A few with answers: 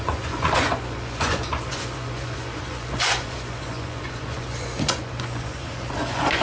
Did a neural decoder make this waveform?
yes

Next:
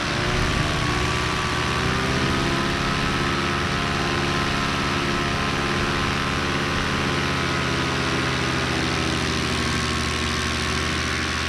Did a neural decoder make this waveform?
no